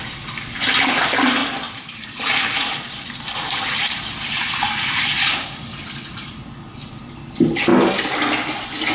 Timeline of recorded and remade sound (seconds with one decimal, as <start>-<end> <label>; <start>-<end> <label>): 0.0-1.4 recorded; 1.4-6.0 remade; 6.0-8.9 recorded